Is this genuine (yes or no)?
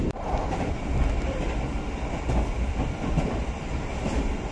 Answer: no